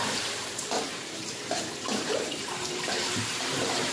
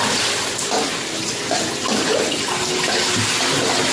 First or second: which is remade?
first